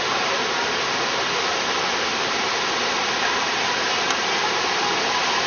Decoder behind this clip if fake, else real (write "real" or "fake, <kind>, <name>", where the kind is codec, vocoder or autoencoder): real